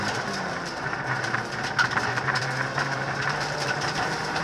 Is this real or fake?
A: fake